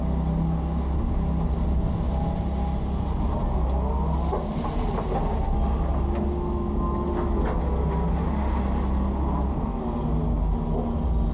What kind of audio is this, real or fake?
real